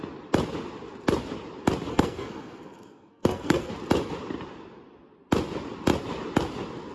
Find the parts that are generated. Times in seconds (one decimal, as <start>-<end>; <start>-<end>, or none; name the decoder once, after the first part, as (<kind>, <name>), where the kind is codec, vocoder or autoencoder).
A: 1.9-3.7 (codec, SNAC)